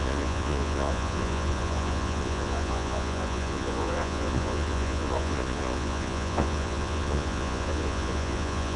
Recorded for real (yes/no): no